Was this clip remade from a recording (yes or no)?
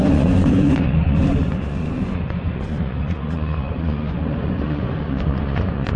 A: yes